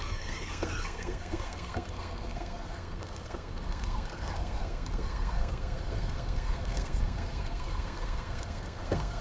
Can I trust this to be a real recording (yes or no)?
no